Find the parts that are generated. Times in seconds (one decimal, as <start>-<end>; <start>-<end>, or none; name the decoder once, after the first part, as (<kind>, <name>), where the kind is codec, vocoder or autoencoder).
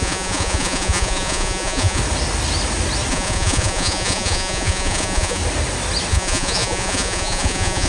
0.0-2.0 (vocoder, Vocos); 3.1-5.4; 6.1-7.9